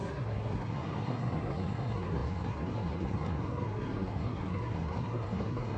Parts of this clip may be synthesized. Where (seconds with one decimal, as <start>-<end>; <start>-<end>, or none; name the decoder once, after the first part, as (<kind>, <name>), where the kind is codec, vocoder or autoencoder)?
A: 0.0-5.8 (codec, SNAC)